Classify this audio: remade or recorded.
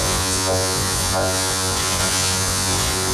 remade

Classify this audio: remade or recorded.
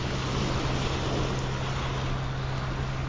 recorded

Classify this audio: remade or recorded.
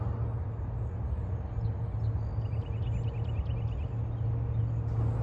recorded